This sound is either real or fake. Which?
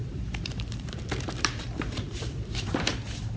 fake